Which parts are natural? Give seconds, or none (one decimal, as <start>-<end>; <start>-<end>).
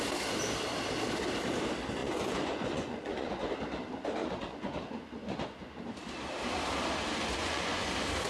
0.0-2.0; 3.5-4.2; 5.8-7.4; 7.9-8.3